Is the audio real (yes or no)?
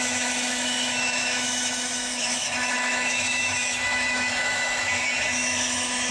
no